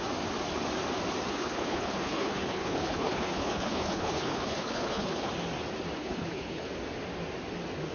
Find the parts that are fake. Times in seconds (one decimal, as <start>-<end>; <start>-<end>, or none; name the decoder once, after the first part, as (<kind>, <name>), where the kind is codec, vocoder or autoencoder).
1.3-5.3 (codec, HILCodec); 6.0-6.7